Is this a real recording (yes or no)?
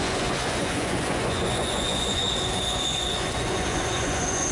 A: no